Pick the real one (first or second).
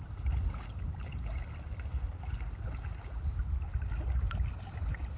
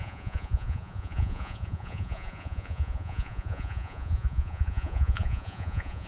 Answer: first